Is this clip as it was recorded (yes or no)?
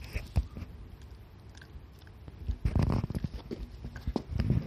yes